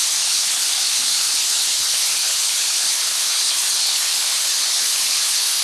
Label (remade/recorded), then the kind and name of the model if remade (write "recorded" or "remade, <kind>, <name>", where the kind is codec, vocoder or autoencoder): remade, codec, HILCodec